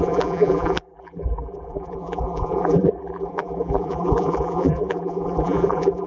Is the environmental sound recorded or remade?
remade